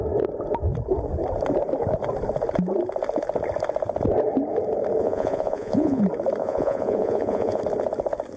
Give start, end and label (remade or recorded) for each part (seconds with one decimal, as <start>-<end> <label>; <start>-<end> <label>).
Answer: 0.0-5.0 recorded; 5.0-6.0 remade; 6.0-6.4 recorded; 6.4-7.6 remade; 7.6-8.4 recorded